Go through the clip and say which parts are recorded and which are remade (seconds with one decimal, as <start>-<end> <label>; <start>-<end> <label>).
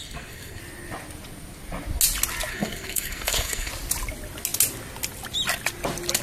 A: 0.0-0.6 remade; 0.6-2.5 recorded; 2.5-3.7 remade; 3.7-6.2 recorded